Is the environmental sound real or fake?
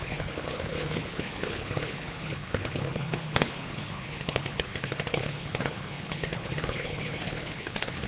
fake